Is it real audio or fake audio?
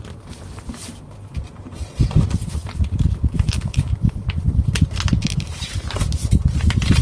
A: fake